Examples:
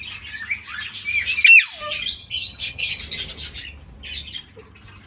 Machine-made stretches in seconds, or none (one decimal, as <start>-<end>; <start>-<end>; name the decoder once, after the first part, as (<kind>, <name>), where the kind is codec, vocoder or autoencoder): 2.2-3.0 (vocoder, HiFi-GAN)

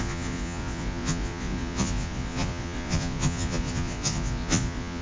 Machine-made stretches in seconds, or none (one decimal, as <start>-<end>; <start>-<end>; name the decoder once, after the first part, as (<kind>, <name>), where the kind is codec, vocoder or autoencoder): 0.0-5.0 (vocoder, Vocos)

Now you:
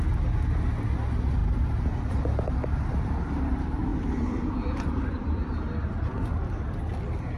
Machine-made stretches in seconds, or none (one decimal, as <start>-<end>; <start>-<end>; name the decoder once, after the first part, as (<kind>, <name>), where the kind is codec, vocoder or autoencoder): 1.4-3.3 (vocoder, BigVGAN v2); 3.9-6.8